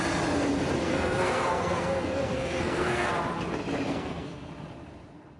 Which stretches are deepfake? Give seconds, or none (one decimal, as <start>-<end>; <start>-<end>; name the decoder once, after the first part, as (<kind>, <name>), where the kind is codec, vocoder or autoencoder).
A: 0.8-3.1 (codec, SNAC); 3.9-4.5